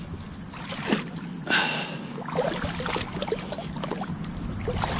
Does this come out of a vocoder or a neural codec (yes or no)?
no